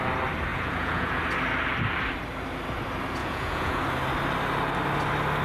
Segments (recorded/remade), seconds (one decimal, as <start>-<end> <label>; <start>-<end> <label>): 0.0-0.5 recorded; 0.5-1.2 remade; 1.2-3.2 recorded; 3.2-3.8 remade; 3.8-5.4 recorded